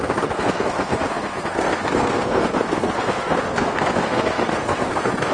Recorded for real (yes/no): no